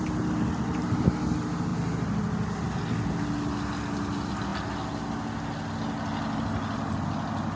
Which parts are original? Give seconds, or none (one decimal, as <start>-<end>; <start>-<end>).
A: 0.0-7.6